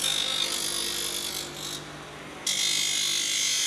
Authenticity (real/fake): real